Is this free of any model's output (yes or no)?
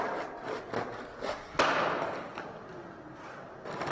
yes